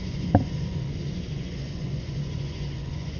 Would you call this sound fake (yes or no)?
yes